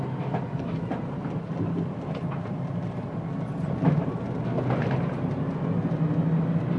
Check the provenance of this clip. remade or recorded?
recorded